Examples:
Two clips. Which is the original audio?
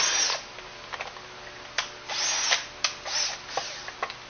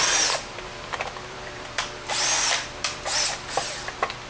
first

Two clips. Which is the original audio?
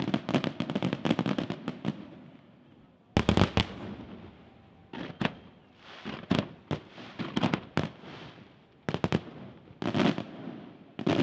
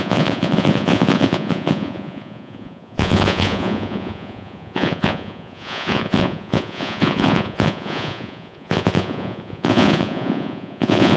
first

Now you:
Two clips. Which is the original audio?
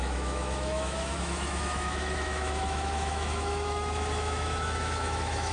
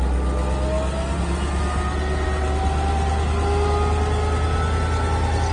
second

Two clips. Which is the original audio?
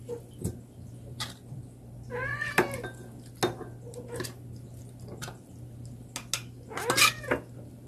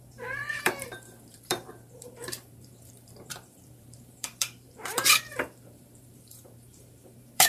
first